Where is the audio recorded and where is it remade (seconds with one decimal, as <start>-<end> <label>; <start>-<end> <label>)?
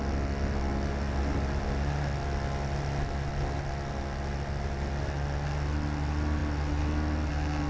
0.0-7.7 recorded